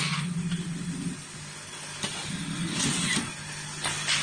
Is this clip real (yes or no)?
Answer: yes